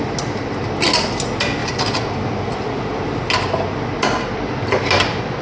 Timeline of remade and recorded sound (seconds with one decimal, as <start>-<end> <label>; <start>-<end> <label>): 0.0-5.4 recorded